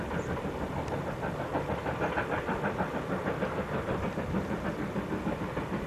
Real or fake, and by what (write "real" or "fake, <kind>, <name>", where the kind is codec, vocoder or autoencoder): fake, vocoder, BigVGAN v2